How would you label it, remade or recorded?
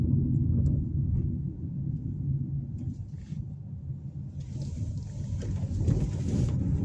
recorded